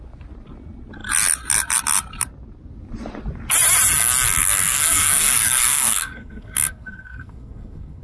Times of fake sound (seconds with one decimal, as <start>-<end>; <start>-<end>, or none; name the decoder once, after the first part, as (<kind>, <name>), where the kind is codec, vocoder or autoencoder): 4.4-8.0 (codec, SNAC)